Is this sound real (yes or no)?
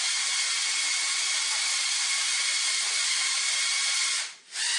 yes